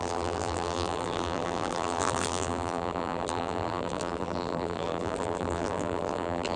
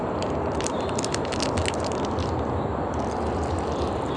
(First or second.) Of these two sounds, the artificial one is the first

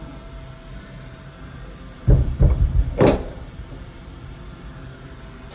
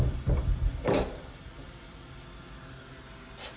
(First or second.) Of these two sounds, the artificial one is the first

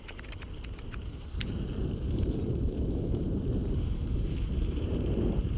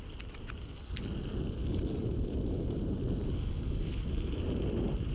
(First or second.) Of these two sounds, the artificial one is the first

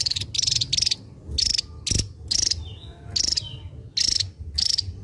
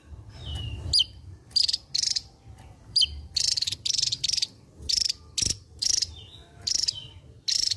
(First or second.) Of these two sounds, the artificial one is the second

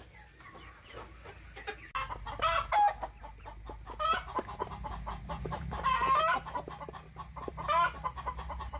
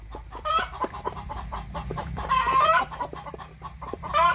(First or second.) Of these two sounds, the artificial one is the second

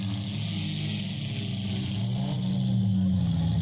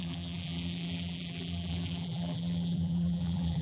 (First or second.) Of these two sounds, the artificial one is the second